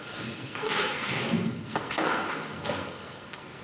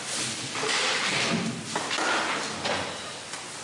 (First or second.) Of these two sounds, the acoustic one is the second